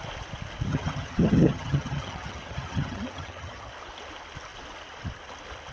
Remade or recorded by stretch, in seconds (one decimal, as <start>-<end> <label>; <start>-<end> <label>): 0.0-0.7 recorded; 0.7-3.7 remade; 3.7-5.7 recorded